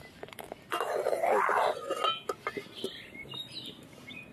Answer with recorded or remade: recorded